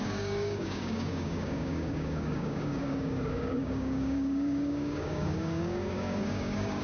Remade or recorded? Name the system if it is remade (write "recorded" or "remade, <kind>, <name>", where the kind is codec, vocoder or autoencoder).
remade, codec, DAC